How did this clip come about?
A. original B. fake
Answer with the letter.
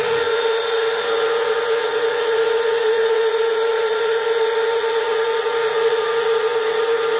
B